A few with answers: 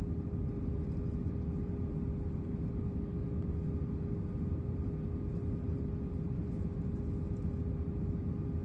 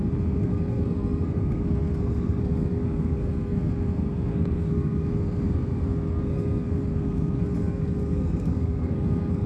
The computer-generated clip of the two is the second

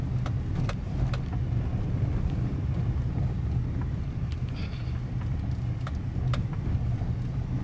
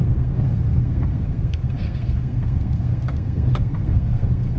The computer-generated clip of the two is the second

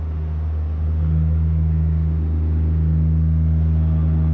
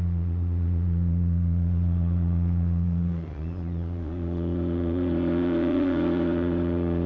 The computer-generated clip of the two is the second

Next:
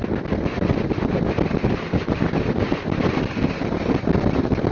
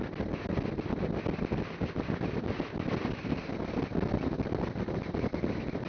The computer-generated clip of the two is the first